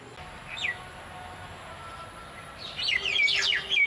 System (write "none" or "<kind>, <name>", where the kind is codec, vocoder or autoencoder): none